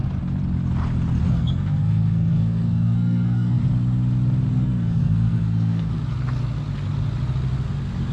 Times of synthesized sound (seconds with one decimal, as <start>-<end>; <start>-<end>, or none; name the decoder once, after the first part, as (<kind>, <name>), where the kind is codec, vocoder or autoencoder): 1.3-3.6 (codec, SNAC); 4.5-5.9